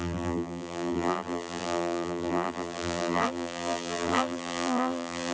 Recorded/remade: remade